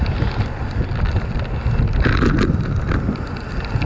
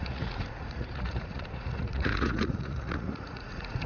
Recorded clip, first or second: first